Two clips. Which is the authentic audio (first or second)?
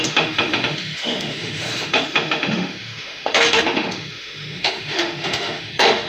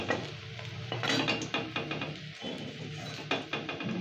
second